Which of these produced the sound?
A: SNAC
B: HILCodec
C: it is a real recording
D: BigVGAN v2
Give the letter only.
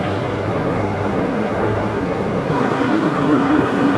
A